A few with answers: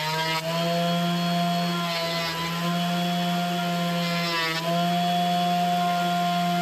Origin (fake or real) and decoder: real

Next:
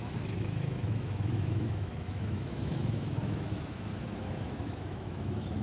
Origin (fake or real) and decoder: fake, autoencoder, DAC-VAE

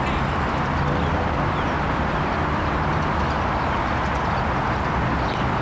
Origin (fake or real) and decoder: real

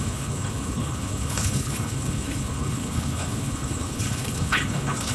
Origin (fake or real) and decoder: fake, codec, HILCodec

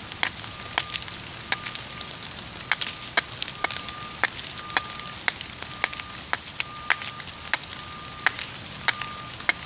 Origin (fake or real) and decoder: real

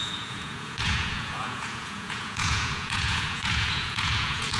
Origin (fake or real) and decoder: fake, vocoder, Vocos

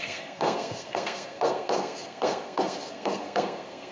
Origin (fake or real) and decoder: fake, codec, SNAC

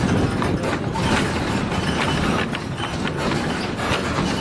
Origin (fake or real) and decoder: real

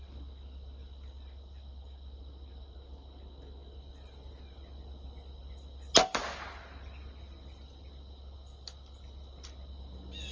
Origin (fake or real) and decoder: real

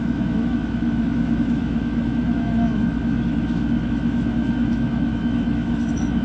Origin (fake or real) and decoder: fake, autoencoder, DAC-VAE